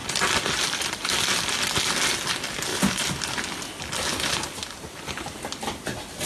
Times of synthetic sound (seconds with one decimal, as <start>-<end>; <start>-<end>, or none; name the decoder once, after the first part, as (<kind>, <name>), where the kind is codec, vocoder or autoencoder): none